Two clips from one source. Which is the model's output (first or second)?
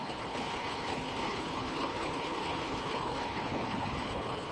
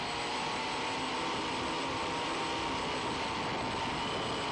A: first